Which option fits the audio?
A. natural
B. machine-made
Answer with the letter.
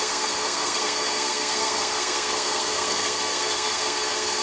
B